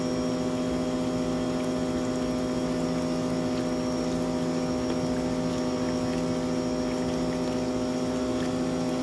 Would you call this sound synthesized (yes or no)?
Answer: no